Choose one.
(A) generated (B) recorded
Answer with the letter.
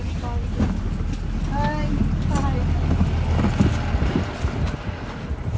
B